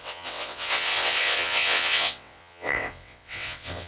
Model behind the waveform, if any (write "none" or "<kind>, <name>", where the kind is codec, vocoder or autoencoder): vocoder, WaveNeXt